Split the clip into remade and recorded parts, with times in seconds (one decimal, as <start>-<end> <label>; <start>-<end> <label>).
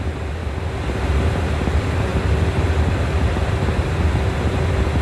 0.0-5.0 recorded